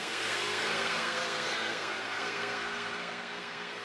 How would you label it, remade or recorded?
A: remade